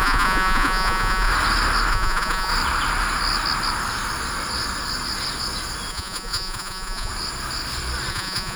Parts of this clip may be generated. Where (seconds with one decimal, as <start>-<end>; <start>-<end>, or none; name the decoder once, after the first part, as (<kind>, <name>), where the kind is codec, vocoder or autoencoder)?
0.0-1.3 (vocoder, Vocos); 1.9-2.5; 5.9-7.1; 8.1-8.6